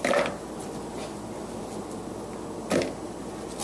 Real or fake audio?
real